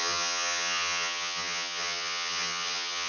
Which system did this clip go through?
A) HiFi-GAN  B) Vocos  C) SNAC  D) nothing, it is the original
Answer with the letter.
A